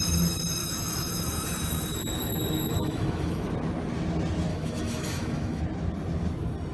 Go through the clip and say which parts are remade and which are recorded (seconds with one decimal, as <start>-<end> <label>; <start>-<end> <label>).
0.0-0.6 recorded; 0.6-3.5 remade; 3.5-4.5 recorded; 4.5-5.6 remade; 5.6-6.7 recorded